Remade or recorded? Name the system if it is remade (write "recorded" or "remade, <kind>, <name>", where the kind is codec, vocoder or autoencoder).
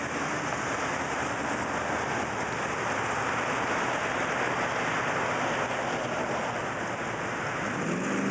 recorded